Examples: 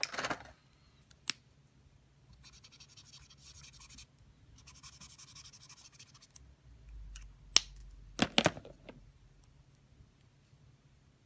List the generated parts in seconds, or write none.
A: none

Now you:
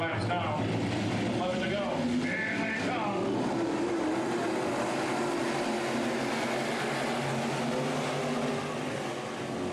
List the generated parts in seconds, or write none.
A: none

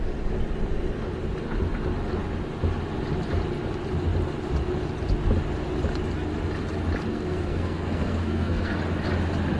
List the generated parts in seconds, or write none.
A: 7.1-8.8

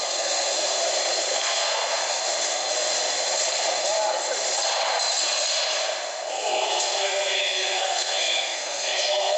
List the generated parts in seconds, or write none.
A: 0.0-0.8; 1.3-2.0; 6.3-9.4

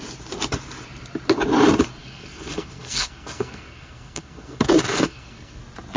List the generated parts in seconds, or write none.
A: 2.0-5.6

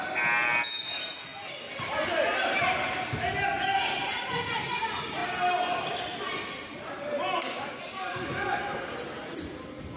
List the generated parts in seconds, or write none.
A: none